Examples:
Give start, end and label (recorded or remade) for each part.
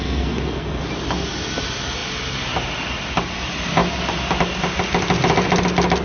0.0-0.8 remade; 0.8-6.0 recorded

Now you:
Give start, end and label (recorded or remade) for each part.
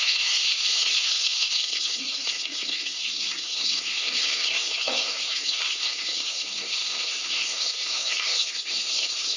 0.0-9.4 remade